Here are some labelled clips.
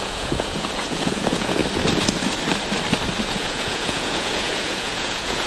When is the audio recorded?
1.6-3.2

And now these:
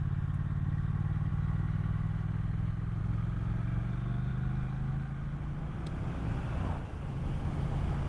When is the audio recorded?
0.0-8.1

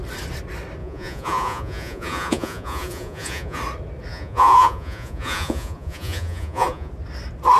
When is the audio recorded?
0.0-0.8; 3.6-4.1; 6.9-7.6

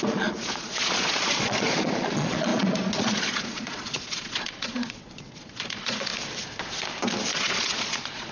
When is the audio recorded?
6.1-7.3

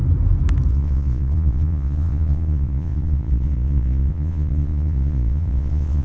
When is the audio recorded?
0.0-0.7